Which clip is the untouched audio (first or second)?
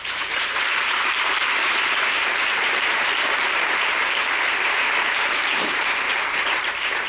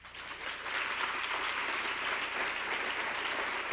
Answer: second